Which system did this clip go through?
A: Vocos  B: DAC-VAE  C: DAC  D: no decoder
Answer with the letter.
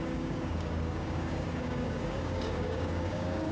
C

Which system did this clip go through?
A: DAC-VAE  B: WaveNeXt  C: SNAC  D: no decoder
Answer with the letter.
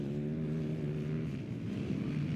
D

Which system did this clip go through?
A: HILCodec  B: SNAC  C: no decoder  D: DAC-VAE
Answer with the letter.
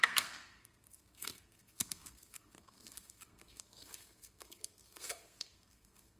B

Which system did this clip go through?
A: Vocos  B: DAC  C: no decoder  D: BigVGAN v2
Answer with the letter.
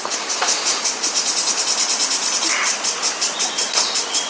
C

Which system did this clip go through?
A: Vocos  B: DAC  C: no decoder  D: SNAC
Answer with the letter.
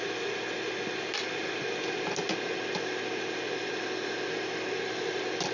C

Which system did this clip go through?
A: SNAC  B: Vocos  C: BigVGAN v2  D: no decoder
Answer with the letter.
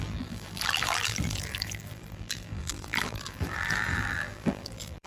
C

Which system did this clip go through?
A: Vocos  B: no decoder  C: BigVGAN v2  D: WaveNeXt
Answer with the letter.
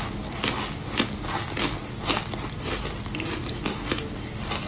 B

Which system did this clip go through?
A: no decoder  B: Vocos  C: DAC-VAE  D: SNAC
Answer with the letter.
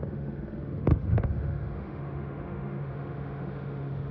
C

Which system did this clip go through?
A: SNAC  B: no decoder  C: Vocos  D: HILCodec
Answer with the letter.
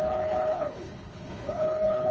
D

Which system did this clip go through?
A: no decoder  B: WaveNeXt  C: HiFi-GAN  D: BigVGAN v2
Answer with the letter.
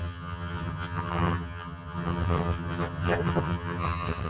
C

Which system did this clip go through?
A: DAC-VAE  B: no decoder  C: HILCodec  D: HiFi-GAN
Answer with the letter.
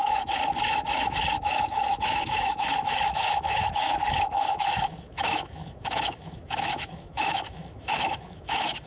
A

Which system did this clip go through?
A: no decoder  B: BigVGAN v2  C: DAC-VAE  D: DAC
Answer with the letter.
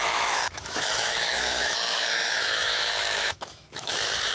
C